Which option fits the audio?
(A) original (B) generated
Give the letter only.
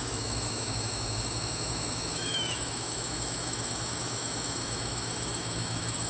B